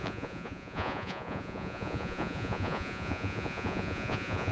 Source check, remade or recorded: remade